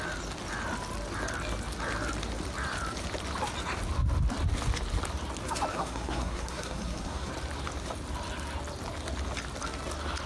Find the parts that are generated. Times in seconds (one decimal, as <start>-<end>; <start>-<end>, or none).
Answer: 5.7-7.3